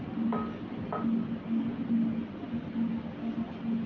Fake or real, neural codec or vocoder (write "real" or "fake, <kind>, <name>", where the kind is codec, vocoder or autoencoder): real